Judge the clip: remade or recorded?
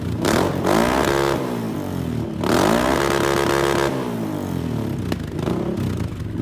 recorded